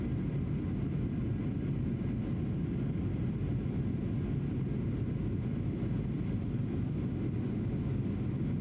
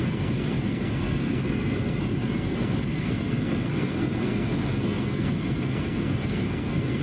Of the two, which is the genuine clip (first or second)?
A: first